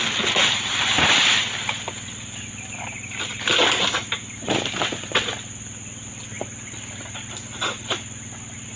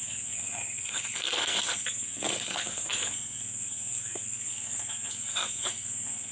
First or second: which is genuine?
first